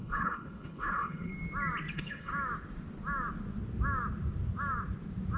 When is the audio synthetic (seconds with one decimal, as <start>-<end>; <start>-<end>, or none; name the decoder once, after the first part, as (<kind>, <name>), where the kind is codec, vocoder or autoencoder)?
0.0-1.3 (codec, HILCodec); 1.9-2.3